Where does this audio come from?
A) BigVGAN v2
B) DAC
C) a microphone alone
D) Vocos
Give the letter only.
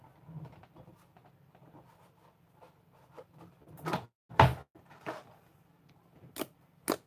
C